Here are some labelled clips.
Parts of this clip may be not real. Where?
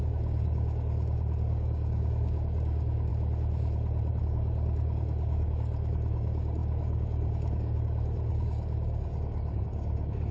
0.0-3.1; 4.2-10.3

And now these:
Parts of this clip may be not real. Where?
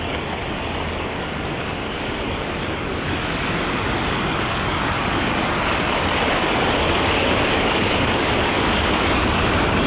0.0-9.9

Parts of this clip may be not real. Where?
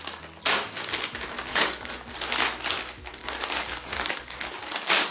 1.5-2.1; 3.2-5.1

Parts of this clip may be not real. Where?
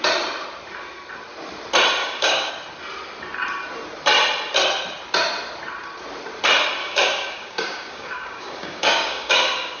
2.0-2.5; 6.8-9.8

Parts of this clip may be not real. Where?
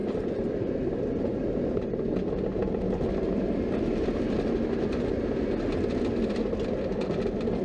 none